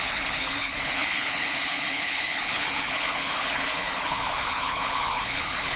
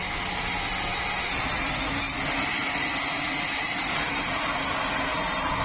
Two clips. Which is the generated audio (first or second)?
first